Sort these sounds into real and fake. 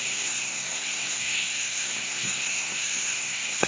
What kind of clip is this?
fake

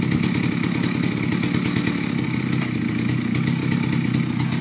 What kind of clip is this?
real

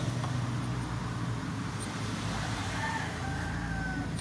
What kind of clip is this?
real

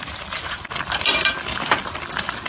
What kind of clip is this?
fake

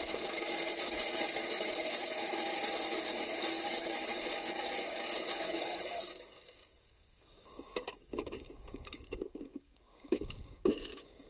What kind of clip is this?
fake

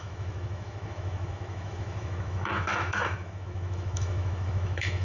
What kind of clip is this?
fake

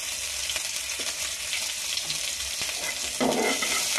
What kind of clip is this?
real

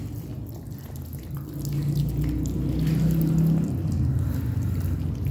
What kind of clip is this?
real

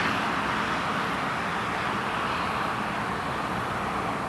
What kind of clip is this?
real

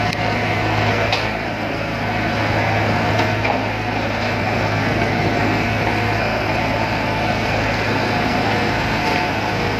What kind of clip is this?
fake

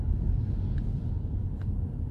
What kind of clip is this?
real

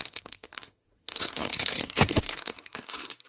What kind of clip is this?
fake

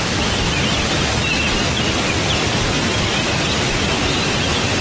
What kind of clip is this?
real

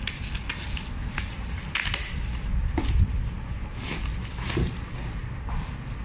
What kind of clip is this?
real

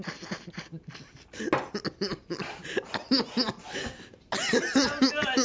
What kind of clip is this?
real